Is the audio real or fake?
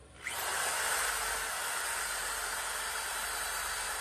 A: fake